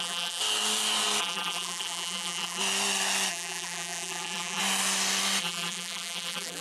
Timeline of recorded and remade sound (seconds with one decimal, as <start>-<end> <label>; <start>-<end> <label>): 0.0-0.4 remade; 0.4-1.2 recorded; 1.2-2.6 remade; 2.6-3.3 recorded; 3.3-4.6 remade; 4.6-5.4 recorded; 5.4-6.6 remade